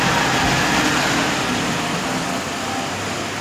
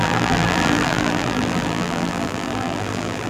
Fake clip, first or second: second